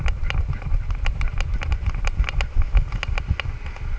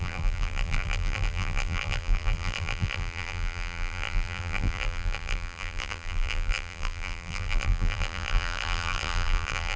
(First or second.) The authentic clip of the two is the first